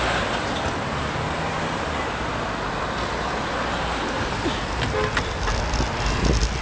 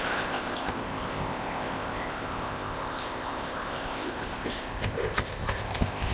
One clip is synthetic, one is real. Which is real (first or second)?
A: first